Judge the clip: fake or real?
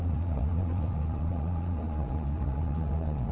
fake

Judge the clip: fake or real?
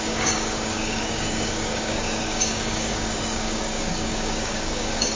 fake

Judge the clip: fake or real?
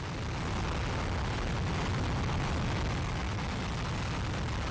real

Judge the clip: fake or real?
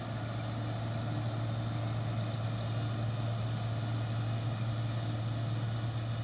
real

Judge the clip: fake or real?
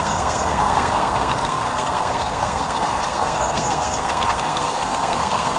fake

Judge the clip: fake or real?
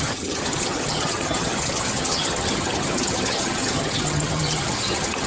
fake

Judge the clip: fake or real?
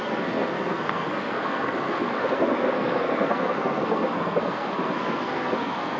fake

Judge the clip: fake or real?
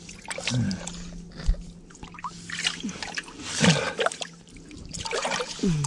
real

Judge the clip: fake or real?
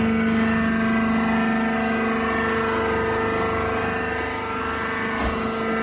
real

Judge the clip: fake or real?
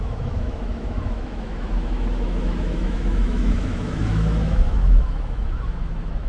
fake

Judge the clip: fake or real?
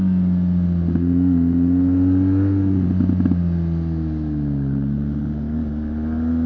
real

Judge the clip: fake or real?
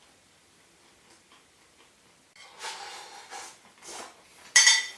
real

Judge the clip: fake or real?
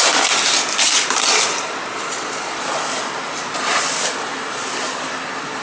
real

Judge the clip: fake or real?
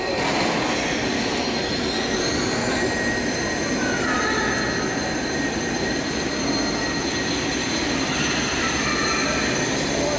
real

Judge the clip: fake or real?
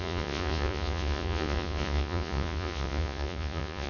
fake